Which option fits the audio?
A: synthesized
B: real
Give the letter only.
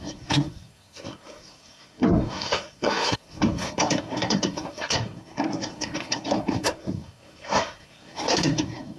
A